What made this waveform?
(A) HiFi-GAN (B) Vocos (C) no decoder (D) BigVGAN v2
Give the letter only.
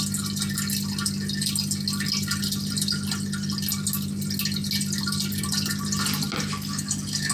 C